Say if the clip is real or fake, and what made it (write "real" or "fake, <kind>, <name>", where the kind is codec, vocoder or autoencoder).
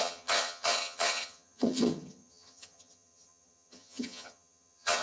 fake, vocoder, HiFi-GAN